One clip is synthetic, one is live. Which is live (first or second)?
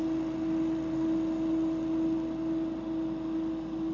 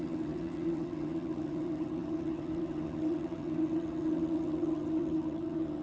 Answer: first